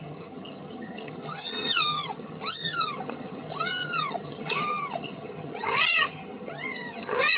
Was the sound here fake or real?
fake